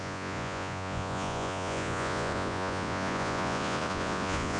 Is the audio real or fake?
fake